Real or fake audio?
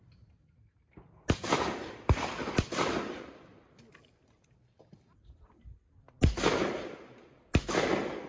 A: real